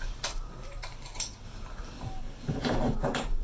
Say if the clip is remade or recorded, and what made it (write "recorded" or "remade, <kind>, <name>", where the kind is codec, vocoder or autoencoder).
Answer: remade, vocoder, BigVGAN v2